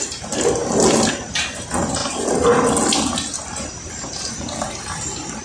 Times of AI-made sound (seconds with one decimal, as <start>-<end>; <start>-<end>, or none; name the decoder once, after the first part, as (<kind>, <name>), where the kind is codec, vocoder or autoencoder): 2.0-4.2 (vocoder, BigVGAN v2)